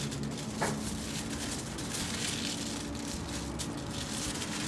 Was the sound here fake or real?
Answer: real